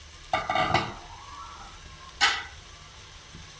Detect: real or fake real